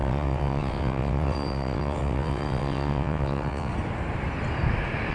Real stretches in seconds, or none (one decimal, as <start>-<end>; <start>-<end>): 3.7-5.1